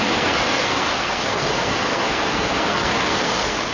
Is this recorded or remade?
remade